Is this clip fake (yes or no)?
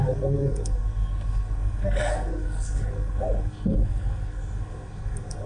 yes